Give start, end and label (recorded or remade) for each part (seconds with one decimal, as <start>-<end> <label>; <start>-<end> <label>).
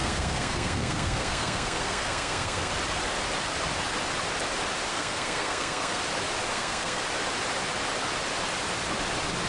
0.0-2.7 remade; 2.7-4.9 recorded; 4.9-6.0 remade; 6.0-6.5 recorded; 6.5-7.0 remade; 7.0-9.5 recorded